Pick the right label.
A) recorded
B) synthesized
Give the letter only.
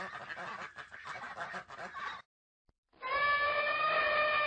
A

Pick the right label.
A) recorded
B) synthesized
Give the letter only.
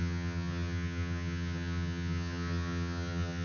B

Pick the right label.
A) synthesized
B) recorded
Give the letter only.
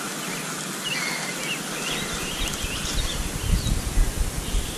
B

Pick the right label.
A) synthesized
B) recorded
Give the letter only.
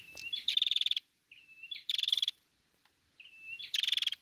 A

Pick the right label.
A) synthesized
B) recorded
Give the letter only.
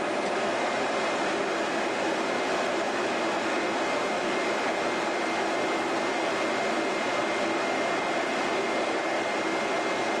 B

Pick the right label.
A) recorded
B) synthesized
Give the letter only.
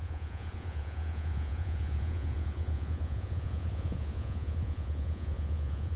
B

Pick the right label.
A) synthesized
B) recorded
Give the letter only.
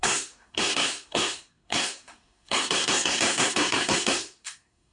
A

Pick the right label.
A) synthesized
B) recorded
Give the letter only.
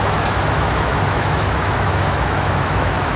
A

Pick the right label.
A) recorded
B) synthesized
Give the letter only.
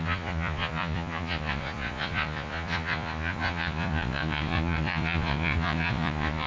B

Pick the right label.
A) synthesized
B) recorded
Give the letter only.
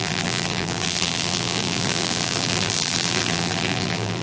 A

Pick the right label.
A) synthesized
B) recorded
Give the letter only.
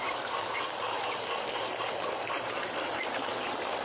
B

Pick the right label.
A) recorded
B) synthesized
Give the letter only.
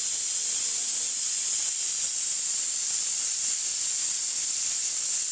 A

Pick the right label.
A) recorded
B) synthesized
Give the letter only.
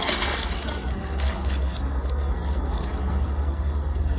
B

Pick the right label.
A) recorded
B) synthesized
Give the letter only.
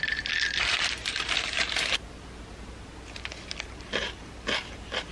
B